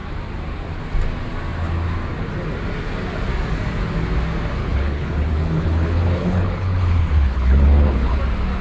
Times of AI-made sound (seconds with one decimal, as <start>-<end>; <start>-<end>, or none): 4.6-8.2